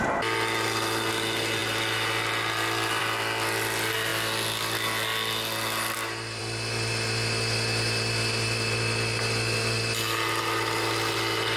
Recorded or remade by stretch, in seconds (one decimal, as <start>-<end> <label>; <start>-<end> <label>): 0.0-11.6 recorded